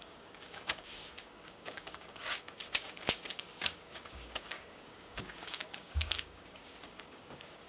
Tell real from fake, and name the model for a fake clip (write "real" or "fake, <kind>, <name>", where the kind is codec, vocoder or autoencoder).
fake, codec, DAC